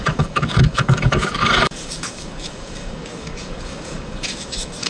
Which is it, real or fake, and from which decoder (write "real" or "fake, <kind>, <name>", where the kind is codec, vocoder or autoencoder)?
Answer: fake, codec, DAC